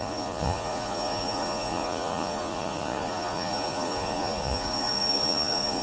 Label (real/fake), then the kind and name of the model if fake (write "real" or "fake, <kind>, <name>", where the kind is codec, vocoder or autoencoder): fake, vocoder, Vocos